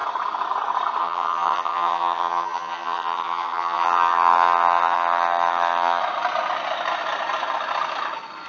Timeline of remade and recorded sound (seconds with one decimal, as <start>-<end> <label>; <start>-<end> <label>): 0.0-1.0 recorded; 1.0-6.0 remade; 6.0-8.5 recorded